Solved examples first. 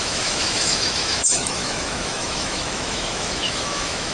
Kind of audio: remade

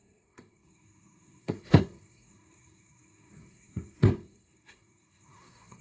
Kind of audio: remade